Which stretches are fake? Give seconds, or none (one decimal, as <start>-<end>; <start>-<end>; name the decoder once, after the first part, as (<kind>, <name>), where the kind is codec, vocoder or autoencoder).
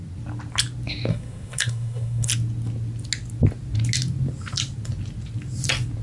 1.1-2.3 (codec, SNAC)